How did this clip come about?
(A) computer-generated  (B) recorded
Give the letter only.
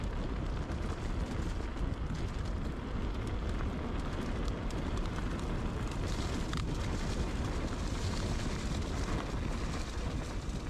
B